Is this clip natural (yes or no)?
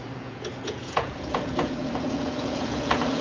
no